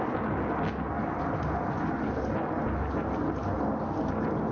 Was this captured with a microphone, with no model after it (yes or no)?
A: yes